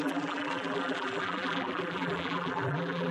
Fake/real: fake